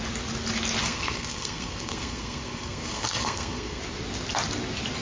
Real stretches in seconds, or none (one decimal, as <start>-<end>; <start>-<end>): 0.0-0.8; 3.8-5.0